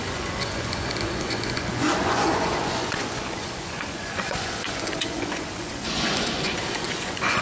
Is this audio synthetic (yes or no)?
yes